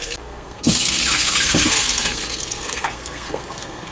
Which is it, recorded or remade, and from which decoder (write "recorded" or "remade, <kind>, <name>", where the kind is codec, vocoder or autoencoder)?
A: remade, codec, SNAC